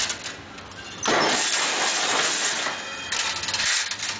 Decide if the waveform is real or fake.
real